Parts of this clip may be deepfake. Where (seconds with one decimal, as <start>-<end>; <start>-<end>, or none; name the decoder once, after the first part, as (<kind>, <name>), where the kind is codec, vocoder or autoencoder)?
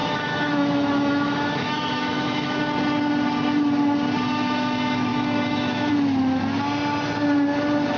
0.0-2.6 (autoencoder, DAC-VAE); 5.1-5.9